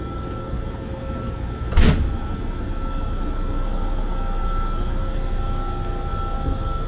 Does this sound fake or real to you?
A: real